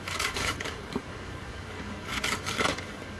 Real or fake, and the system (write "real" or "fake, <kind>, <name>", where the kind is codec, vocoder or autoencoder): fake, codec, DAC